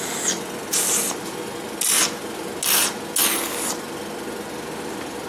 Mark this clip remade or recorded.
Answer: recorded